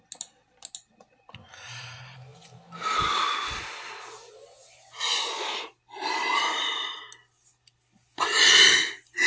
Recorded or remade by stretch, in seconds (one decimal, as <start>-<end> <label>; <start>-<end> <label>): 0.0-9.3 recorded